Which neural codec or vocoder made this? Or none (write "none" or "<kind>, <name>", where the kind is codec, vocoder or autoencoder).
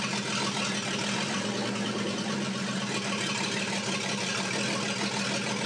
none